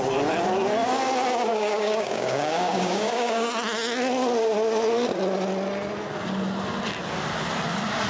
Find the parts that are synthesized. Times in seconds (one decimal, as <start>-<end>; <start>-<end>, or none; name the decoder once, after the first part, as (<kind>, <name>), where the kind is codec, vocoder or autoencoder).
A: 1.5-3.5 (codec, DAC)